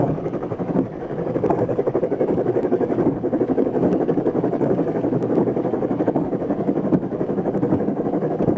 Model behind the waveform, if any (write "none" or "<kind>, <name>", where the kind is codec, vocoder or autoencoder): codec, DAC